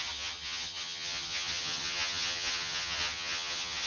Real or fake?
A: fake